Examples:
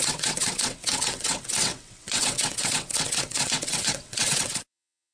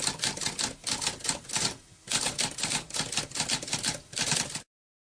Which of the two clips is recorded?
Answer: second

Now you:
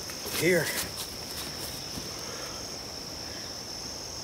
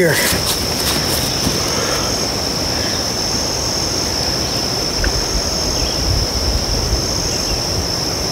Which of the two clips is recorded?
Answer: second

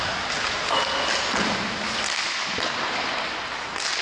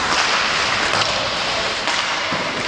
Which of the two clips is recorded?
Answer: first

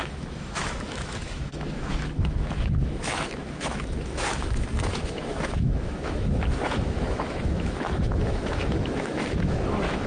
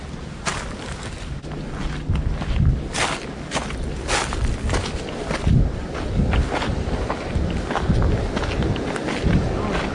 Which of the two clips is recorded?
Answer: second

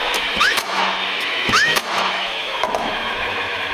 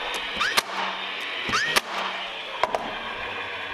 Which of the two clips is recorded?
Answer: second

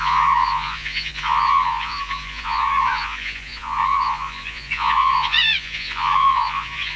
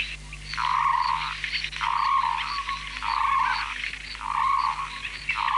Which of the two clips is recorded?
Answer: second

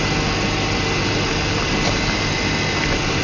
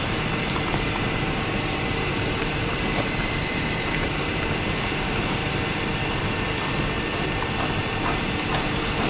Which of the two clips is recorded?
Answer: first